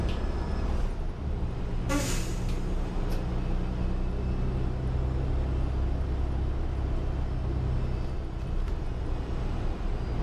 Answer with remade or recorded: recorded